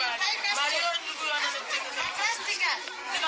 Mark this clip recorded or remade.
recorded